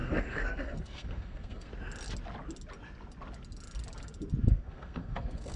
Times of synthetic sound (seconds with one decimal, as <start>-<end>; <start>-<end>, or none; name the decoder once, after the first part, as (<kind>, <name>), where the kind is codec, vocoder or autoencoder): 0.0-1.7 (codec, SNAC); 4.5-5.6